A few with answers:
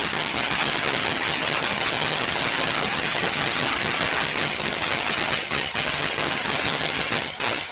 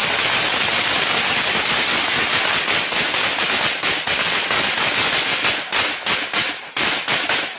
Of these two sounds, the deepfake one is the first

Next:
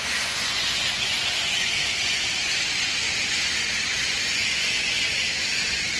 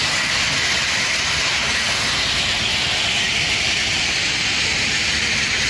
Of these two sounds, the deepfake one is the first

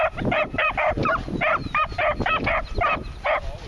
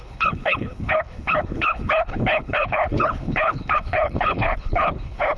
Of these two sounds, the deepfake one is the second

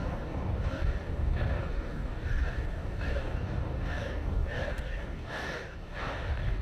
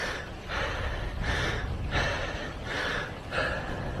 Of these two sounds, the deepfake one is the first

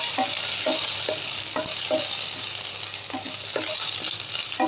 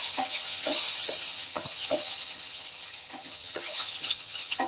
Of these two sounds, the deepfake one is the second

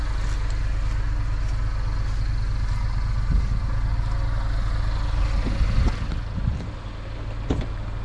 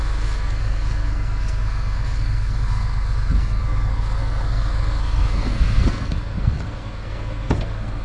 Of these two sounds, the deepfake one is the second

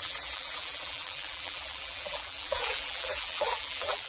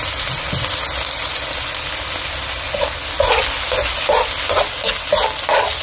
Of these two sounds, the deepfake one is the first